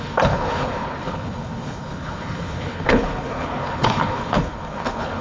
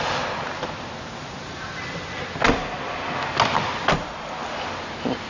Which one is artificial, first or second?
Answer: first